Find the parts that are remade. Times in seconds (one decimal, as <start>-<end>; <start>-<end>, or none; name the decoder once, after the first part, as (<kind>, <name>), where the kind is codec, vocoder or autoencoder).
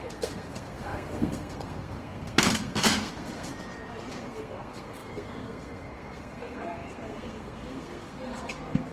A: 0.0-3.5 (codec, SNAC); 4.1-8.9